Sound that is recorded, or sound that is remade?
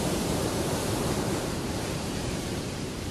remade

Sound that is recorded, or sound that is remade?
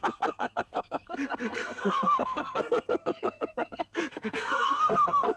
remade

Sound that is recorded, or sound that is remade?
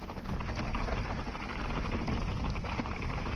recorded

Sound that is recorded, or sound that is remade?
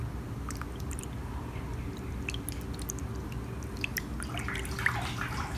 recorded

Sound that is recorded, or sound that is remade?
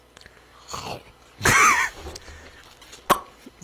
recorded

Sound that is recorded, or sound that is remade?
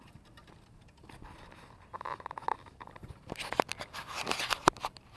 recorded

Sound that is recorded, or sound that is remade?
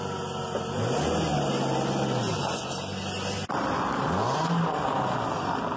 recorded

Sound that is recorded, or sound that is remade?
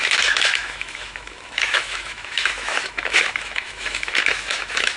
remade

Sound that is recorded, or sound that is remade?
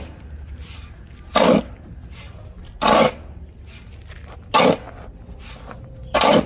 recorded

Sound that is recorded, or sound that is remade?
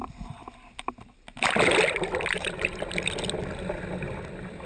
recorded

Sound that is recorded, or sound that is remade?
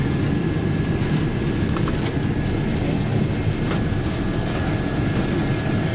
recorded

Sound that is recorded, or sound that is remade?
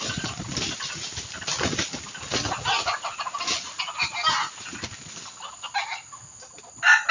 recorded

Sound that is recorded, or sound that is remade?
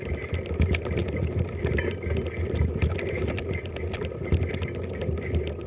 recorded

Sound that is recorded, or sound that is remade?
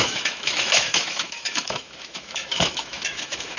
remade